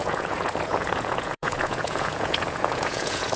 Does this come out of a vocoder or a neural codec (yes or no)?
yes